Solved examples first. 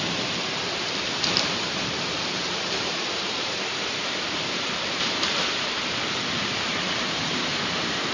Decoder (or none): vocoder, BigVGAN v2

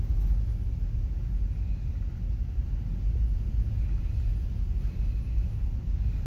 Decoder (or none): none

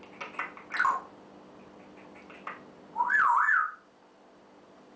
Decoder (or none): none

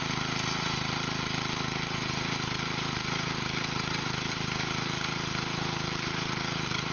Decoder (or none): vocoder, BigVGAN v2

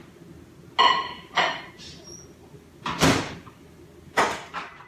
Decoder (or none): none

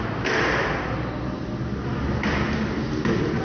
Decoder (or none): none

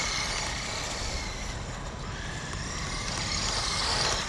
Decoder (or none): none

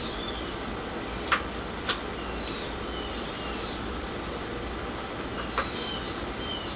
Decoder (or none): none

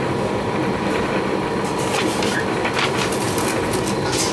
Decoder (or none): none